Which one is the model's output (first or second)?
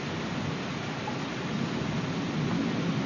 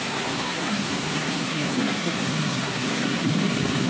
second